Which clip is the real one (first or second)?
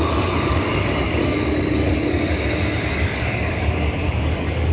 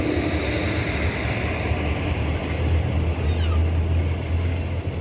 second